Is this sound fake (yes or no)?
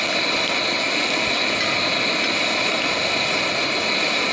no